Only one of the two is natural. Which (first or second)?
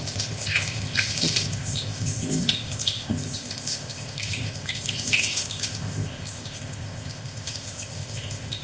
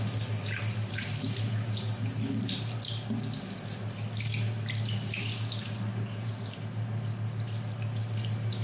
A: second